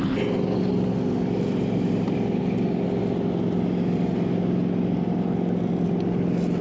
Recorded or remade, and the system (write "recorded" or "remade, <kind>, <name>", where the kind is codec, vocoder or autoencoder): recorded